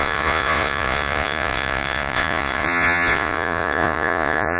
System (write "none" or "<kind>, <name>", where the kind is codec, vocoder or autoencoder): vocoder, Vocos